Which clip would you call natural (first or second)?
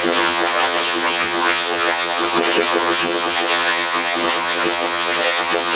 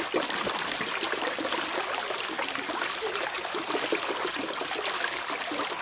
second